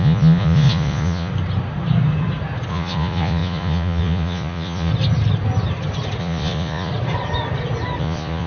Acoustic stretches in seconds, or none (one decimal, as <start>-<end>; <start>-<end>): 1.3-2.7; 4.9-6.2; 6.9-8.0